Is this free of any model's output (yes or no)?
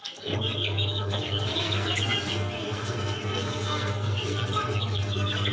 no